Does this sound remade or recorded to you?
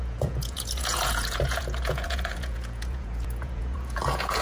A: remade